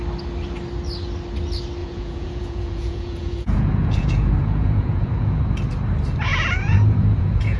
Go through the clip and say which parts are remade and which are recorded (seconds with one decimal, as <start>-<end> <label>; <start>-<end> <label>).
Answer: 0.0-1.8 recorded; 1.8-5.4 remade; 5.4-6.3 recorded; 6.3-7.6 remade